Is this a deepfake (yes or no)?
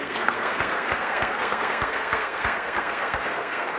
yes